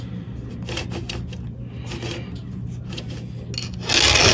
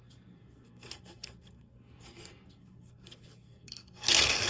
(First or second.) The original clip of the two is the first